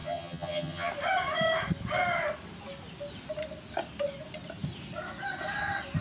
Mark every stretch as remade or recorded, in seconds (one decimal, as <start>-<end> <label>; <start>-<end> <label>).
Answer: 0.0-0.9 remade; 0.9-6.0 recorded